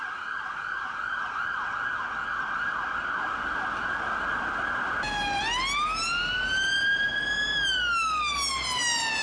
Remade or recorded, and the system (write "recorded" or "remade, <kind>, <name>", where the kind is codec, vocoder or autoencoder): recorded